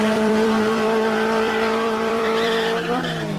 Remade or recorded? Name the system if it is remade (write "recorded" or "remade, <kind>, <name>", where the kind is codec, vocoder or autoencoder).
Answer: remade, vocoder, BigVGAN v2